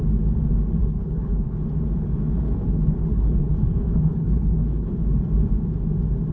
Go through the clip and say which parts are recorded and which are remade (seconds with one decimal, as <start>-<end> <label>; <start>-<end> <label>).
0.0-0.8 recorded; 0.8-1.6 remade; 1.6-2.6 recorded; 2.6-4.9 remade; 4.9-6.3 recorded